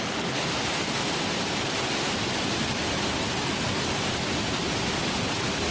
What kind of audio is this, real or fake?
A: real